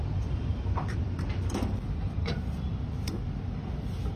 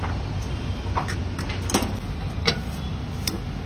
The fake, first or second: first